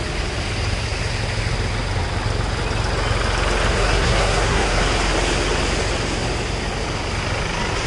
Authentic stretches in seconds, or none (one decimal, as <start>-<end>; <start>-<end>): 0.0-3.7; 4.8-7.9